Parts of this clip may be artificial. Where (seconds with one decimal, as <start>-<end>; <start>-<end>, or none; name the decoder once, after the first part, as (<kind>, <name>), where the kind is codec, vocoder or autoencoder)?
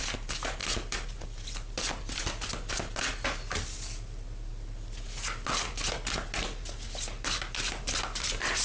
none